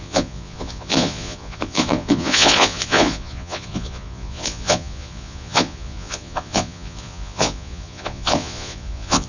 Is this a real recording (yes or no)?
no